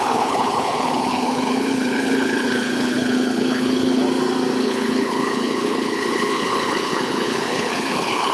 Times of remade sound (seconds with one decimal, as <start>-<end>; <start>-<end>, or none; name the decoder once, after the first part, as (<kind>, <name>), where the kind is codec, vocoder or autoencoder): 0.0-4.0 (codec, HILCodec); 4.6-8.3